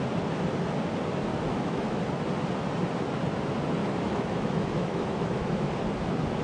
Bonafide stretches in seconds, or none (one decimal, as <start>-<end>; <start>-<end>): 0.0-1.3; 2.0-3.8; 5.7-6.4